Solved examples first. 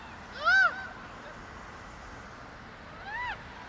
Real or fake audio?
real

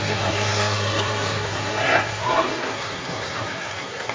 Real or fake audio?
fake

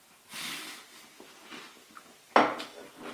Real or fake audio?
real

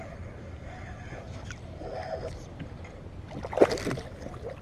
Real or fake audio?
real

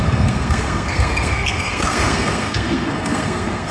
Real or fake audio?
fake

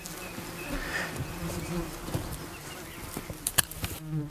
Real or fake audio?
real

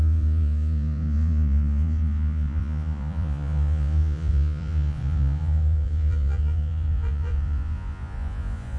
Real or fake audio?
fake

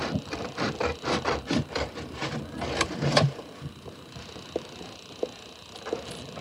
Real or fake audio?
fake